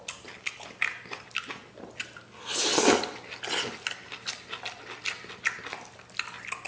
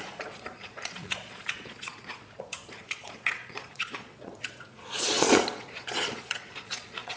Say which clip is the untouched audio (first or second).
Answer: first